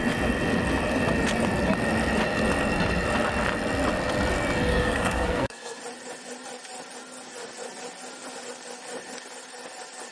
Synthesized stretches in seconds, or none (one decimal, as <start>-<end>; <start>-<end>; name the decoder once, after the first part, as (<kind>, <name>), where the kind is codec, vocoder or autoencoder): 4.7-5.8 (codec, SNAC)